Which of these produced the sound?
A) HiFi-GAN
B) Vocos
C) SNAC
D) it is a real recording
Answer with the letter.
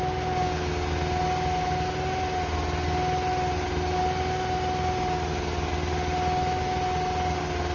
D